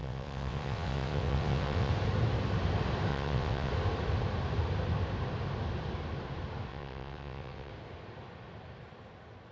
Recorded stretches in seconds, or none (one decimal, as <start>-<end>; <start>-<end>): 1.9-3.1; 3.7-6.7; 7.7-9.5